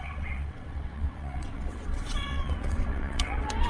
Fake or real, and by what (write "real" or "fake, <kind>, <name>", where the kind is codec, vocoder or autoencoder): fake, vocoder, WaveNeXt